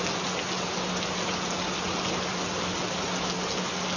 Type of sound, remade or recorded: recorded